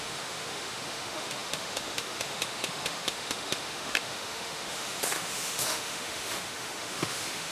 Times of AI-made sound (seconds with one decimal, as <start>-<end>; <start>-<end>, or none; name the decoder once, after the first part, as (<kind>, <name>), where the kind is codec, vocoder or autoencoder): 0.0-7.5 (autoencoder, DAC-VAE)